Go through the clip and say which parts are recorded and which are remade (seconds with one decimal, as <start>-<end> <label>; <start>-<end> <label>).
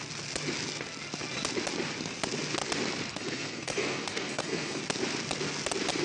0.0-3.1 recorded; 3.1-4.8 remade; 4.8-6.0 recorded